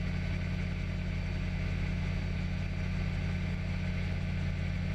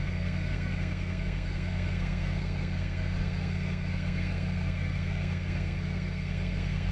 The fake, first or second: second